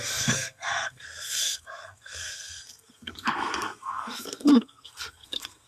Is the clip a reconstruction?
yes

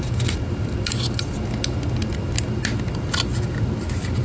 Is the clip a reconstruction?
no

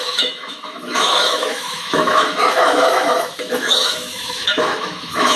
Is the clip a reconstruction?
yes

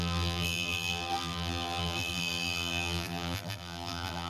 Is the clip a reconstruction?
yes